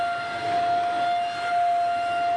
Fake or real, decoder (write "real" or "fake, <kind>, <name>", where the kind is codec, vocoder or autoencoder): real